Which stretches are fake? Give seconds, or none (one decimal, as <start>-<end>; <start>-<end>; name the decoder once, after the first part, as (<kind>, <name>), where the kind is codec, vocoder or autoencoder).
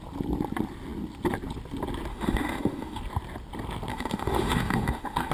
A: 2.1-3.0 (autoencoder, DAC-VAE); 3.9-5.3